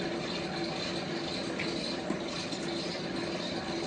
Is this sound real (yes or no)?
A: yes